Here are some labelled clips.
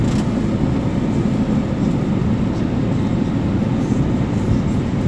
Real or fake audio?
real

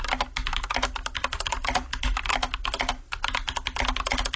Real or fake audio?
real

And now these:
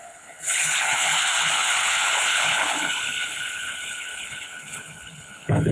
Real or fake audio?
fake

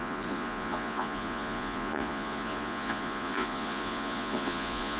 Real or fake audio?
fake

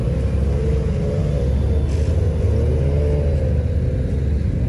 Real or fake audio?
real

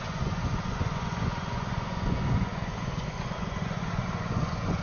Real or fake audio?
fake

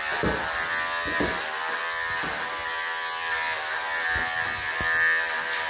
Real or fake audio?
real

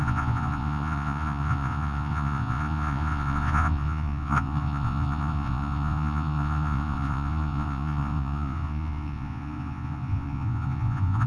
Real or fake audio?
fake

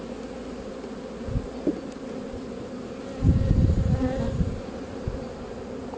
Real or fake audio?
real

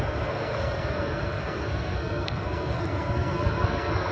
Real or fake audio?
fake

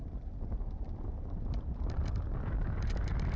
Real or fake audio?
real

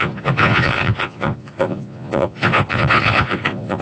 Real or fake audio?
fake